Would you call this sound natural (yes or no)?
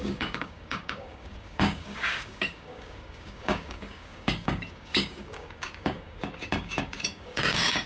no